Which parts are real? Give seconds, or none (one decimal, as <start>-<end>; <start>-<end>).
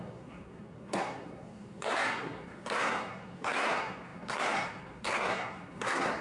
none